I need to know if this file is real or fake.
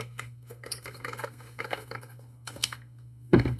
fake